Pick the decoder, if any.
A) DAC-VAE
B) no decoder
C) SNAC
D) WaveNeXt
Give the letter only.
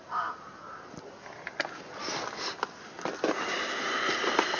B